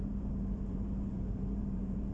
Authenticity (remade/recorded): remade